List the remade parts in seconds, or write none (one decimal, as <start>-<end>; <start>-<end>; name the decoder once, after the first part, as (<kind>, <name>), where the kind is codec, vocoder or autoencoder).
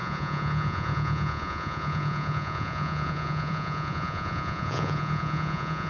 0.0-5.9 (vocoder, Vocos)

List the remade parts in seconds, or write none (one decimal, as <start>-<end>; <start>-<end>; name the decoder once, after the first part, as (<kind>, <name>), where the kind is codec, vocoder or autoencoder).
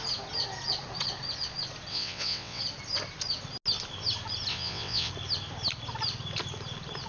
1.9-2.6 (vocoder, WaveNeXt); 4.5-5.1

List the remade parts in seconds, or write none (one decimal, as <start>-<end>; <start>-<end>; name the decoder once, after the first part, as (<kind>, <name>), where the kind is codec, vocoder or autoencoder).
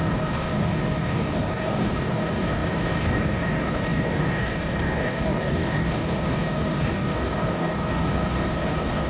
0.0-9.1 (codec, DAC)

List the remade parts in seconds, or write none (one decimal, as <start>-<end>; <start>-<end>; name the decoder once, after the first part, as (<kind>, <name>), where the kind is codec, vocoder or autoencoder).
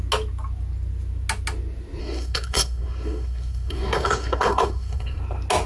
2.0-5.2 (codec, SNAC)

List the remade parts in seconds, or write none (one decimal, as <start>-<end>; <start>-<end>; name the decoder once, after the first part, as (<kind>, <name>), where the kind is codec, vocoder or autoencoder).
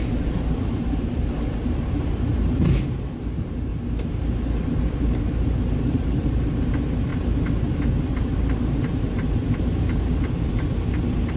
0.0-3.7 (vocoder, BigVGAN v2); 4.9-7.1; 8.2-11.4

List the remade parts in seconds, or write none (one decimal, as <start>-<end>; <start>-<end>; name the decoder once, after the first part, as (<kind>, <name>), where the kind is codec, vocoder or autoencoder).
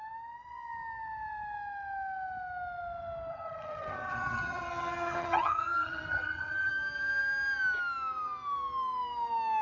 3.3-6.7 (vocoder, HiFi-GAN)